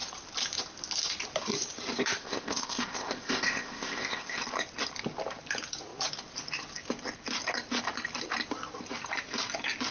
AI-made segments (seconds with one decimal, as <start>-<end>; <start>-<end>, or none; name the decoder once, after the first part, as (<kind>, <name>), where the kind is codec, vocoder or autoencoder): 2.2-4.4 (codec, ZipCodec)